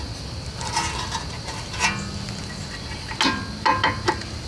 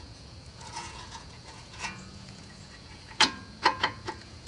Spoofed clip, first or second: second